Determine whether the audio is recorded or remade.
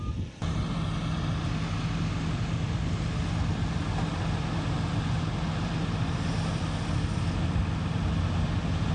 recorded